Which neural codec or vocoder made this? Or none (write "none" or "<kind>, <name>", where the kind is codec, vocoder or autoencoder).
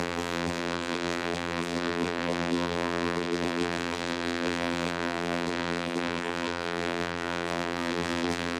vocoder, BigVGAN v2